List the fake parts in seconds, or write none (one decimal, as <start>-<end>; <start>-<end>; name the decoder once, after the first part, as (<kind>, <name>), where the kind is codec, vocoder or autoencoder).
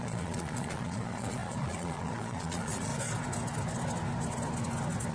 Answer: 0.0-2.9 (vocoder, Vocos)